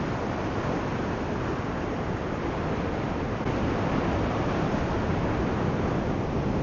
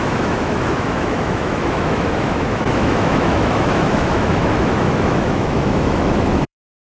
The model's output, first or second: second